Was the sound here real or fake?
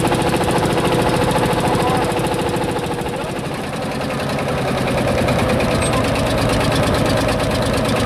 real